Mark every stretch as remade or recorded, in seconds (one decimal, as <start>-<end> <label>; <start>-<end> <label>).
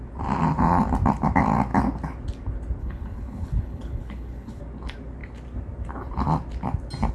0.0-2.8 recorded; 2.8-4.6 remade; 4.6-7.1 recorded